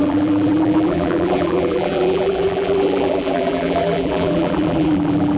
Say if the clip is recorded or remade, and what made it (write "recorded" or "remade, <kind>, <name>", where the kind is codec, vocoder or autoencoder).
remade, vocoder, BigVGAN v2